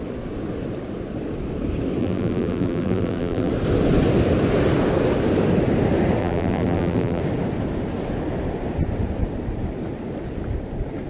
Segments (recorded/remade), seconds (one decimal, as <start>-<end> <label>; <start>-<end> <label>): 0.0-2.0 recorded; 2.0-3.5 remade; 3.5-6.2 recorded; 6.2-7.2 remade; 7.2-11.1 recorded